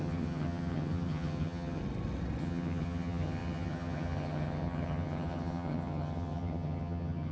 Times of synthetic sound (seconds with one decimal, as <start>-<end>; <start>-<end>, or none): 0.0-1.8; 2.4-7.3